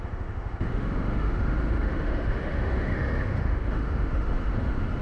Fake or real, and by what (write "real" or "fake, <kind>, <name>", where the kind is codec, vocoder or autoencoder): fake, autoencoder, DAC-VAE